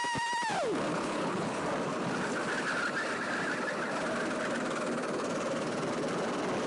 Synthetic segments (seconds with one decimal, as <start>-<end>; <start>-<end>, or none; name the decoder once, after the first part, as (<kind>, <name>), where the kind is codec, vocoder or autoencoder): 0.9-1.6 (codec, HILCodec)